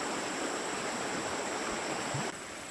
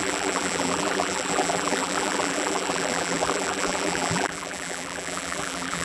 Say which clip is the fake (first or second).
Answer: second